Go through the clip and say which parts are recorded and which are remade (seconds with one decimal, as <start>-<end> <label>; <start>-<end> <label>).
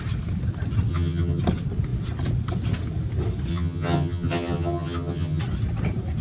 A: 0.0-0.9 recorded; 0.9-1.4 remade; 1.4-3.5 recorded; 3.5-5.4 remade; 5.4-6.2 recorded